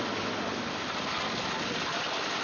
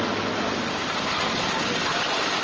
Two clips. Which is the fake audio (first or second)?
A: first